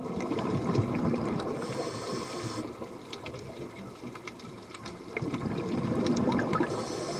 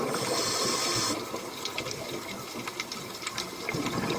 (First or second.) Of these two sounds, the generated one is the second